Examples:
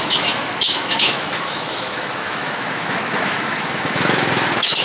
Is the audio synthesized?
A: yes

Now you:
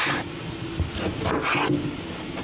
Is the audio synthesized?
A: no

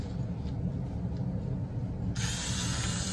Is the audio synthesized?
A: no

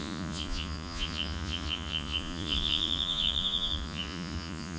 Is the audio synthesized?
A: yes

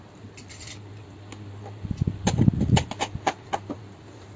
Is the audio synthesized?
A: no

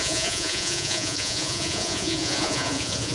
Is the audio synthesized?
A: yes